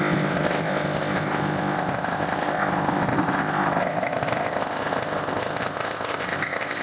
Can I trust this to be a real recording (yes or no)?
no